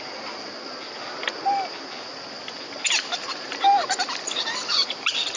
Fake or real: real